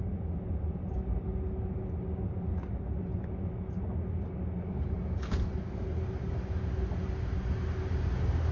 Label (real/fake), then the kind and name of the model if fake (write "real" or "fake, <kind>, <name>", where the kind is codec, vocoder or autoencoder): real